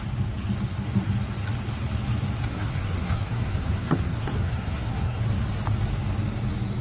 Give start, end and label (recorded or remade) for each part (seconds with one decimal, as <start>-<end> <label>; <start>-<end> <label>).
0.0-2.5 recorded; 2.5-5.2 remade; 5.2-6.8 recorded